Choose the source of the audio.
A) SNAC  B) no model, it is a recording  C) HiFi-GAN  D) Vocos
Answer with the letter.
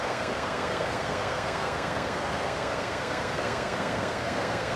A